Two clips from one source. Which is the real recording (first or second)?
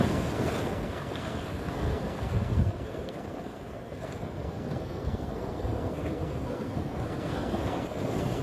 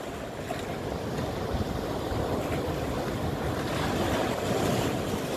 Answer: second